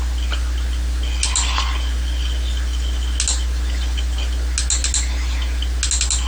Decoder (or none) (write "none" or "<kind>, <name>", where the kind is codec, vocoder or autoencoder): none